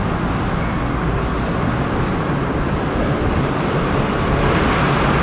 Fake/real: real